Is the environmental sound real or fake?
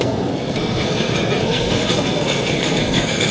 fake